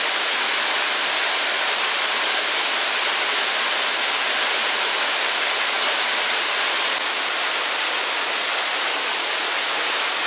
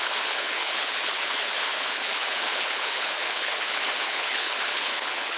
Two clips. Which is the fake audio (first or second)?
second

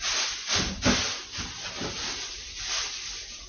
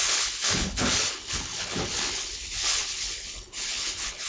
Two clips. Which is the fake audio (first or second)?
second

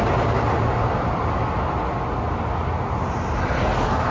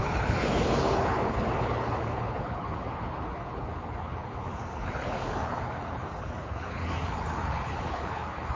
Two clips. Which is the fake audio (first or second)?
second